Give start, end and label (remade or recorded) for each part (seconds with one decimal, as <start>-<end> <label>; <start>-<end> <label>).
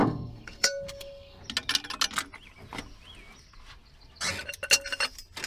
0.0-1.4 remade; 1.4-5.5 recorded